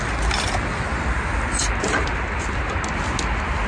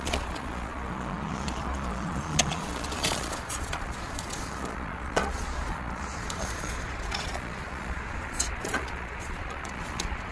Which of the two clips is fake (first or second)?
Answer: second